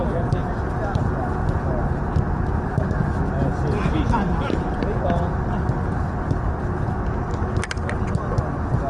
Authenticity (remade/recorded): recorded